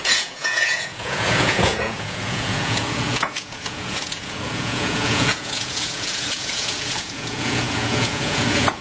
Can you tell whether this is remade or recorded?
remade